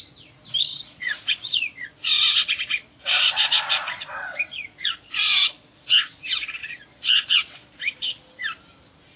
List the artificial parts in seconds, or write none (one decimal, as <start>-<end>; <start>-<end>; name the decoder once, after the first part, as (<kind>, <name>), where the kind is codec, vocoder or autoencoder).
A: 0.7-5.9 (vocoder, Vocos); 6.6-7.8